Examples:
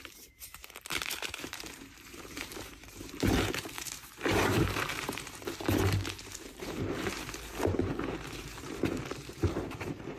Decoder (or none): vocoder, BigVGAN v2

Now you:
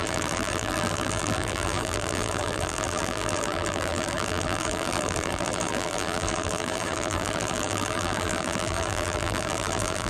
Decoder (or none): vocoder, BigVGAN v2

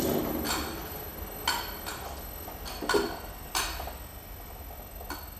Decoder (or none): none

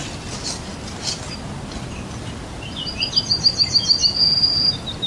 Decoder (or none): none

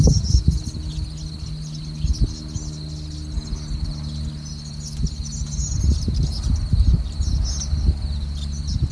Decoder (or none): none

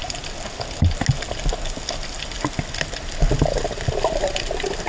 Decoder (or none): none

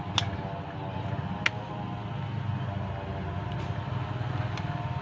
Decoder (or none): none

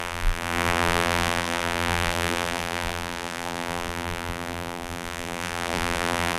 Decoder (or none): vocoder, BigVGAN v2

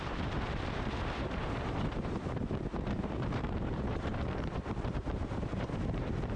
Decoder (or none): vocoder, BigVGAN v2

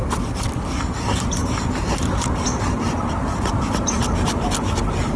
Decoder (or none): none